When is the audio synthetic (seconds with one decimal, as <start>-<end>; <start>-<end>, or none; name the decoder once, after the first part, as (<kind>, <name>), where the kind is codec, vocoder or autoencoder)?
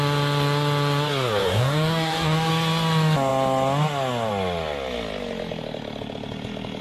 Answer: 1.4-2.5 (codec, DAC)